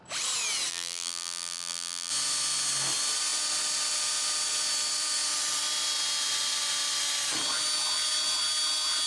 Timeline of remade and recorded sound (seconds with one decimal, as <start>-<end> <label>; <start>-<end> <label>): 0.0-0.7 recorded; 0.7-2.1 remade; 2.1-9.1 recorded